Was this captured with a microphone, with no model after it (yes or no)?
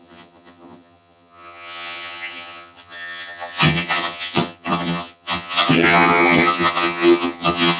no